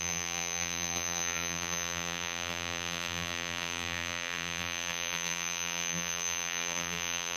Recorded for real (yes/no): no